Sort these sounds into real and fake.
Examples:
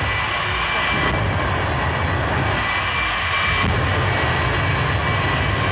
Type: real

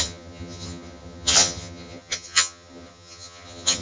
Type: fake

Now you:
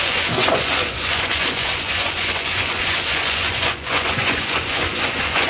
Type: fake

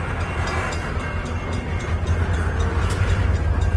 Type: fake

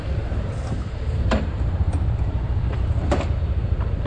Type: fake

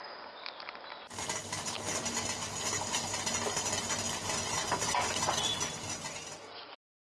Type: real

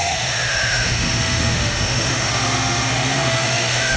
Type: fake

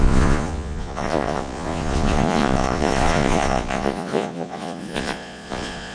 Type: fake